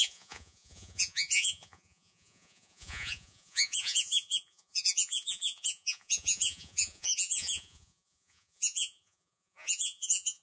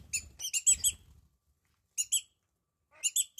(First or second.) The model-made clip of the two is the first